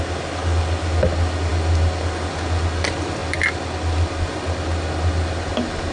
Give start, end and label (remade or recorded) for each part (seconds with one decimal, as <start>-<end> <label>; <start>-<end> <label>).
0.0-5.9 recorded